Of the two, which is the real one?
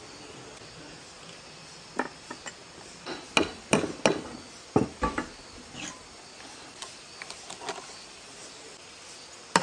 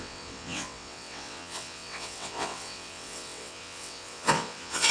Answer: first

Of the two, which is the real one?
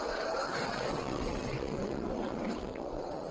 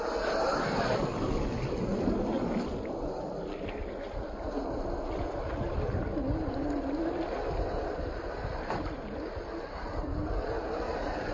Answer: second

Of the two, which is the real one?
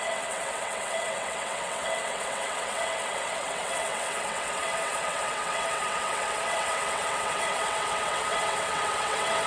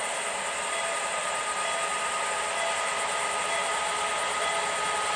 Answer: second